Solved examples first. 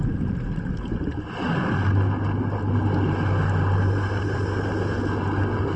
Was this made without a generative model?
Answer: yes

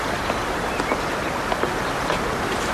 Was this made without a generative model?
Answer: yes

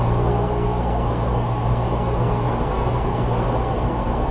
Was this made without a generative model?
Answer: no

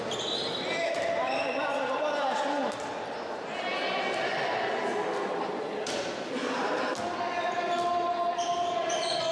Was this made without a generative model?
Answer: yes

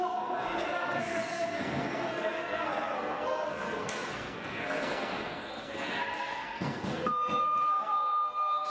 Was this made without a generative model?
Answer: no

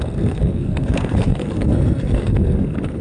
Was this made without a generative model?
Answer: no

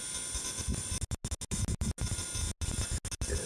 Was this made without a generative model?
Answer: yes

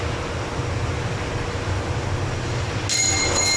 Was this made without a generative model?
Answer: yes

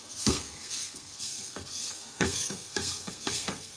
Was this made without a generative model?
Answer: no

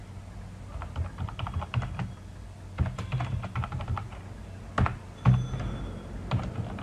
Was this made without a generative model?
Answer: yes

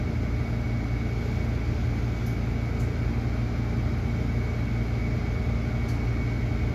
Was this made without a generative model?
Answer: yes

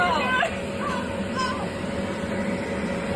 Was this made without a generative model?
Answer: yes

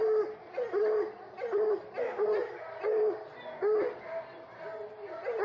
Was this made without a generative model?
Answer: yes